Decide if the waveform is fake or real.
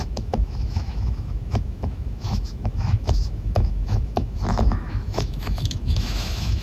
fake